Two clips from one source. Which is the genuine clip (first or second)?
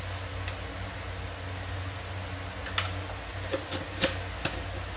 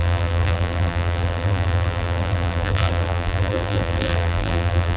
first